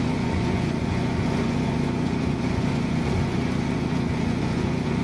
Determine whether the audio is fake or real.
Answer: fake